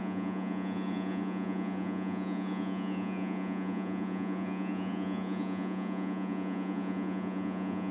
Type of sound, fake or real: fake